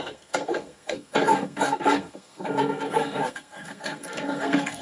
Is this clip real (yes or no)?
no